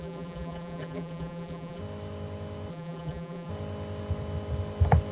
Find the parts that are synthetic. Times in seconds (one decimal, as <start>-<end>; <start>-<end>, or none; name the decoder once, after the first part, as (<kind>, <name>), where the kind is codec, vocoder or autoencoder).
0.0-1.8 (vocoder, BigVGAN v2); 2.7-3.5